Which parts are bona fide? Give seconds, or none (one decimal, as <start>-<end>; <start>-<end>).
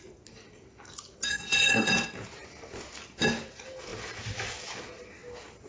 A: 0.0-1.3; 1.9-5.7